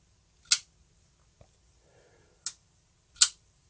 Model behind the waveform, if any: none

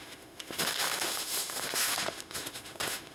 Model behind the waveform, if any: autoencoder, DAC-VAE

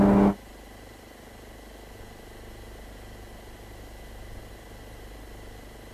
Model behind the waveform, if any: none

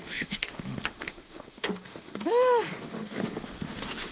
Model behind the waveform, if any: autoencoder, DAC-VAE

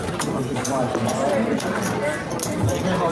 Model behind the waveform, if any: none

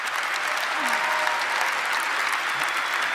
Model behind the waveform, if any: none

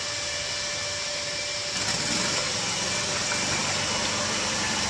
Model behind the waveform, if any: none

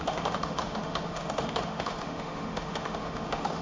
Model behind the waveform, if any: autoencoder, DAC-VAE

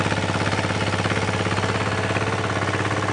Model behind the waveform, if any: none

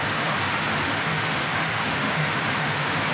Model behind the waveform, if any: autoencoder, DAC-VAE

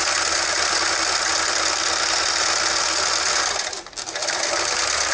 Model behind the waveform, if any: none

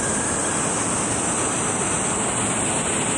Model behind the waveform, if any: none